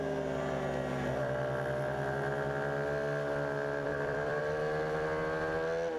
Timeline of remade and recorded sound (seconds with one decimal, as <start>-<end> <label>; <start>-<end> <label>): 0.0-3.9 recorded; 3.9-4.4 remade; 4.4-6.0 recorded